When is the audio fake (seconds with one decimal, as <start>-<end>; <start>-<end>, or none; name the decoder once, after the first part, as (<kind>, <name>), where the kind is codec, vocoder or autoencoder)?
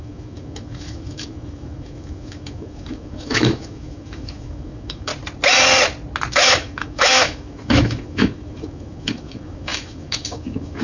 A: 0.0-5.1 (autoencoder, DAC-VAE); 6.3-10.8